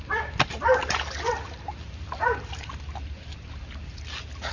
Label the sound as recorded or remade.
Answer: recorded